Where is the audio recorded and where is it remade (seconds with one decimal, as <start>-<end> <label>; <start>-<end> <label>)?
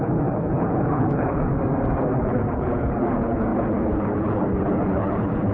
0.0-1.5 remade; 1.5-2.0 recorded; 2.0-5.5 remade